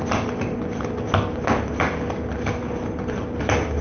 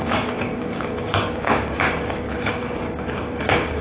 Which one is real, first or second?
first